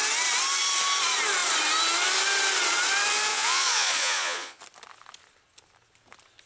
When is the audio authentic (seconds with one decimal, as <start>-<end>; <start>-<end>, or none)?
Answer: 0.0-3.3; 4.6-6.5

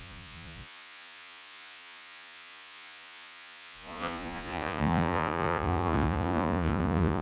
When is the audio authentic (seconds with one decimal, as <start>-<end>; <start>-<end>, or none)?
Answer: none